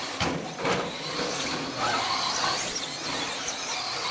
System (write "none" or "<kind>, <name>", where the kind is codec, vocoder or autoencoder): none